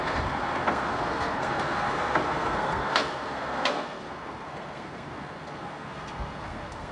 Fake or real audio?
fake